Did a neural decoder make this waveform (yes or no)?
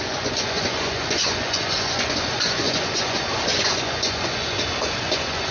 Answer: yes